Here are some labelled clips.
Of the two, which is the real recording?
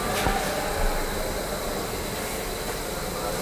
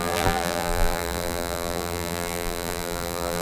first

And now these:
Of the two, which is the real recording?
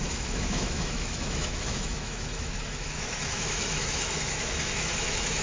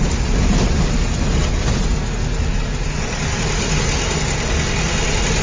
second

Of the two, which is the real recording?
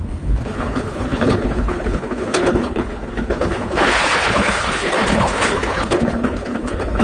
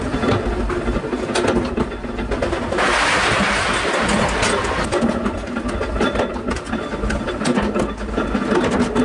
second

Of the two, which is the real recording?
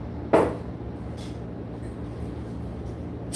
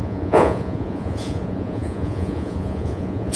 first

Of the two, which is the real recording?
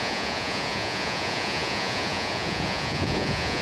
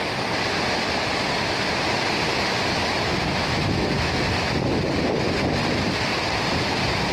second